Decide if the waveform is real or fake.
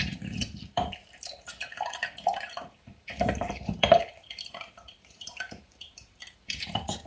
fake